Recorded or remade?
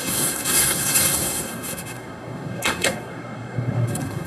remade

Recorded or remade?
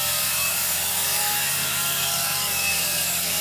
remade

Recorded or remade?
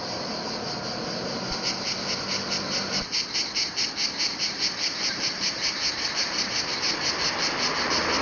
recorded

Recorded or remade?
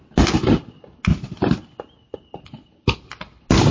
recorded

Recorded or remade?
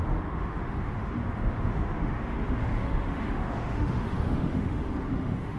remade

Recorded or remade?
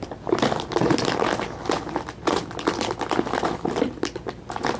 recorded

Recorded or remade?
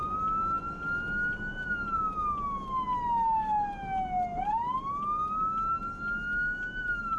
recorded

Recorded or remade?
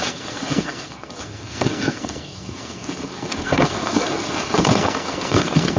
remade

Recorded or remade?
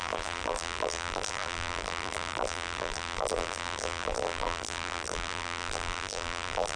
remade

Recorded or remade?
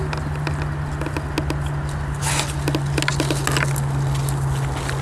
recorded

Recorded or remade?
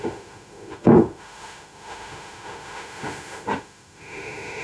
remade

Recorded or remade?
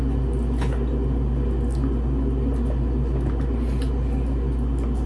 recorded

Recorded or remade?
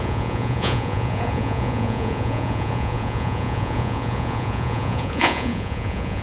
remade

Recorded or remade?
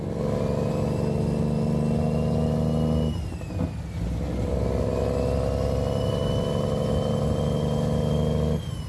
recorded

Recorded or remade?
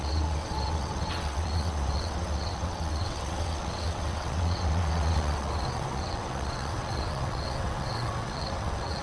remade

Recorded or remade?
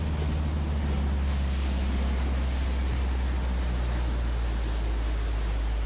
recorded